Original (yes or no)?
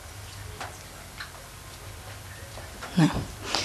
yes